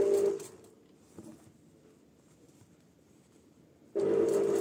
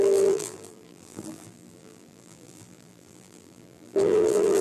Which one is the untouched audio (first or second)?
first